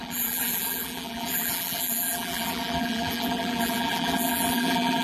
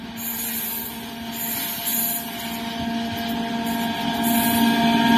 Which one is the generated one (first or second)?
first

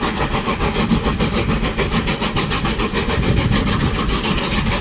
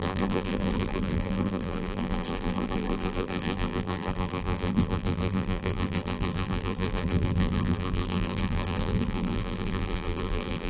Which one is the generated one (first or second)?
second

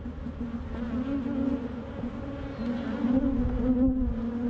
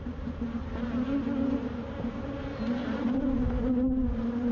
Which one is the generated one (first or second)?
second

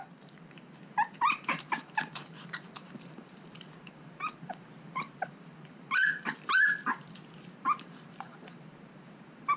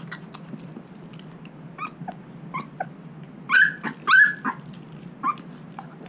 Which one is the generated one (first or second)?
first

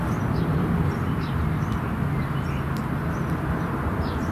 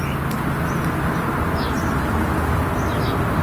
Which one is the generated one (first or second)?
first